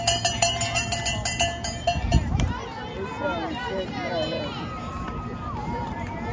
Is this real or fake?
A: real